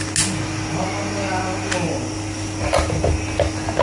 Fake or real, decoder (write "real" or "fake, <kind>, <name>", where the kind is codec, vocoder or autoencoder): real